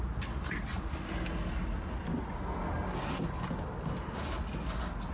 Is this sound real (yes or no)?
yes